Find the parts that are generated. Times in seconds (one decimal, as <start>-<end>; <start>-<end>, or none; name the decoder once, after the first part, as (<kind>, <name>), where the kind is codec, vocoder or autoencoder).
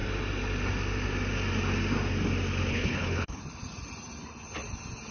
2.7-3.4 (codec, HILCodec)